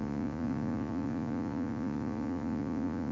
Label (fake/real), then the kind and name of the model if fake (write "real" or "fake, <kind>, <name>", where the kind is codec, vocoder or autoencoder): fake, vocoder, Vocos